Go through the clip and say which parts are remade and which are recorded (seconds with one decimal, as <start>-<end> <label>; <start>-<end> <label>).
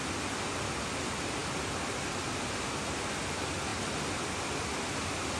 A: 0.0-5.4 recorded